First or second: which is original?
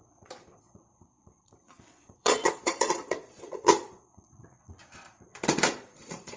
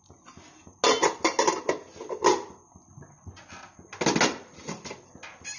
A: second